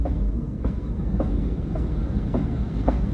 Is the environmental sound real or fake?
fake